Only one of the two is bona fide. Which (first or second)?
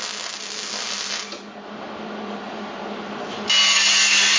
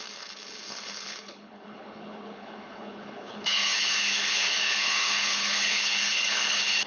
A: first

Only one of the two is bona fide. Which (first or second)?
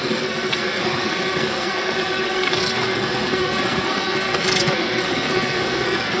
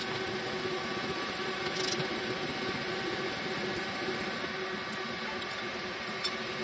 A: second